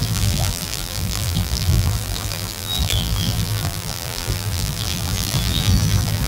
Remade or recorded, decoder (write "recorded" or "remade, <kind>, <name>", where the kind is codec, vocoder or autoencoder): remade, vocoder, BigVGAN v2